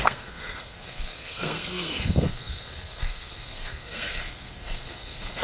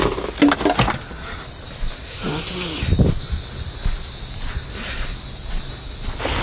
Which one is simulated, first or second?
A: first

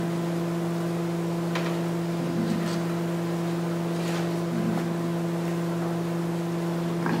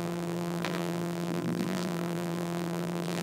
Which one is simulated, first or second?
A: second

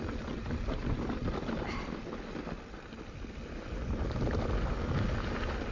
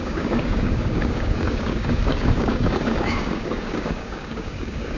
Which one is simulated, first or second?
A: second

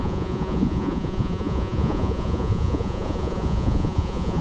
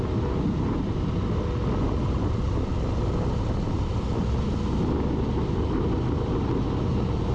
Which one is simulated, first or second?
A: first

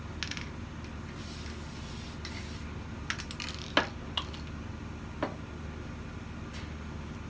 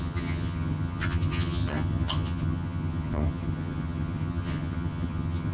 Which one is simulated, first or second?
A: second